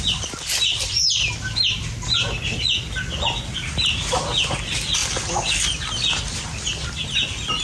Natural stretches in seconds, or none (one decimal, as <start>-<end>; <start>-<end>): 0.0-7.6